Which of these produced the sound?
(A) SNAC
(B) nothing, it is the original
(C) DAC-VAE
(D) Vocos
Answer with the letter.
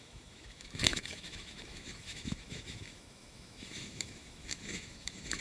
C